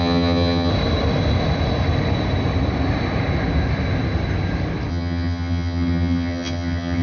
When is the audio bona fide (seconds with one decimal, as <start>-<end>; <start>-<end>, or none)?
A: 0.7-4.9